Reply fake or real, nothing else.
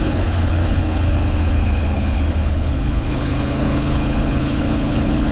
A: fake